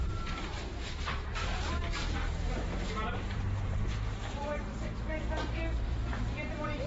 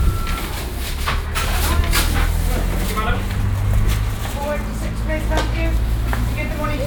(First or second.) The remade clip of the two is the first